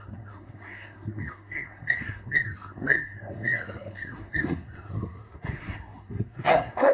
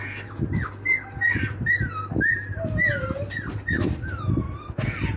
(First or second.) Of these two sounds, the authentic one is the second